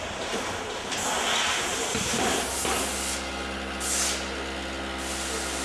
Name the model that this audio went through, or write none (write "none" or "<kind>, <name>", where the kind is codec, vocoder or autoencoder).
none